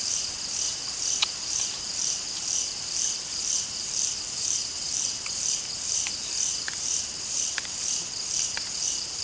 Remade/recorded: remade